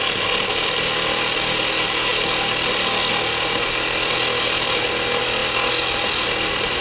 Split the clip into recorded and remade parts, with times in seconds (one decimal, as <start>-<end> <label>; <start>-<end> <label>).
0.0-6.8 recorded